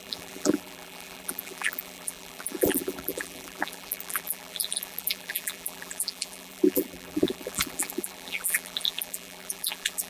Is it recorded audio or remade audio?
remade